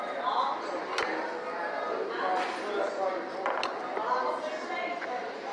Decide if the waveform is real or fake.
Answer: real